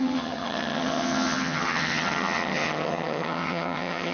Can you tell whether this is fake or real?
fake